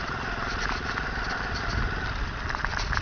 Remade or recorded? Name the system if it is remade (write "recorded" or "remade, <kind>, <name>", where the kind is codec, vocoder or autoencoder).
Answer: recorded